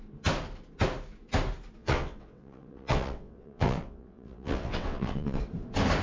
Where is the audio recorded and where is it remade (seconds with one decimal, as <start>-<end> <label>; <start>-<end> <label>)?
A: 0.0-1.8 recorded; 1.8-5.4 remade; 5.4-6.0 recorded